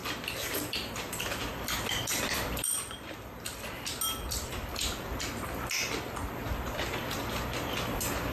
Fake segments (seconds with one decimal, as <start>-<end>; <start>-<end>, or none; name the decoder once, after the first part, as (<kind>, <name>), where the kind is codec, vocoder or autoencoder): 2.1-5.2 (vocoder, BigVGAN v2)